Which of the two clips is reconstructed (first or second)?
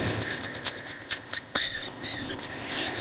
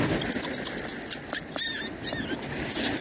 first